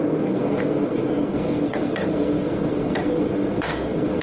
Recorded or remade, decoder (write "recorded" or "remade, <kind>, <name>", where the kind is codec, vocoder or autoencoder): remade, codec, SNAC